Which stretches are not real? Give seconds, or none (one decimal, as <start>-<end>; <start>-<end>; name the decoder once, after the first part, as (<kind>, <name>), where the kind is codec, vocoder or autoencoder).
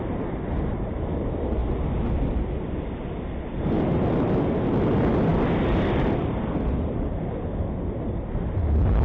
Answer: none